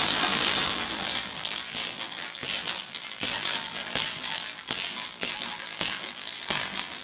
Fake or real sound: fake